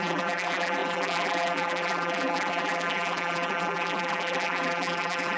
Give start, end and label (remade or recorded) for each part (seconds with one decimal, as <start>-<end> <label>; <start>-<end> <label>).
0.0-5.4 remade